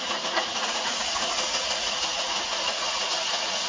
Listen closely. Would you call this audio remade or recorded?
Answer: remade